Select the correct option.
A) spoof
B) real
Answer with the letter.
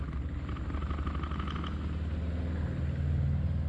B